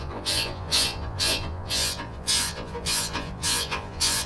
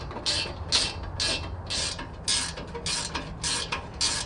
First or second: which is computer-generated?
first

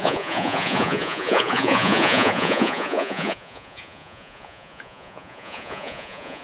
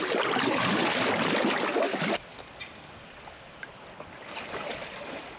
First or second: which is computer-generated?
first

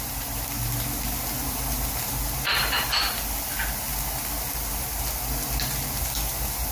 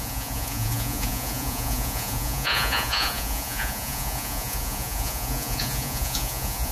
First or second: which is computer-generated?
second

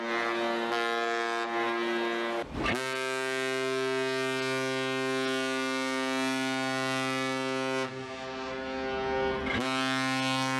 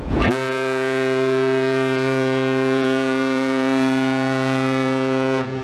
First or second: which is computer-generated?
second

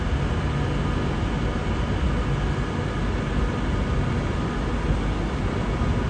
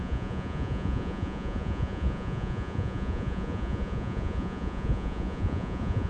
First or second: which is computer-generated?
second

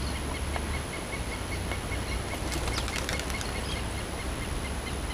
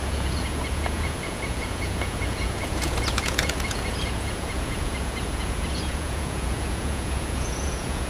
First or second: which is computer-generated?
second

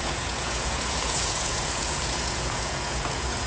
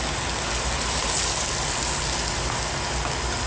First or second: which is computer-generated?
first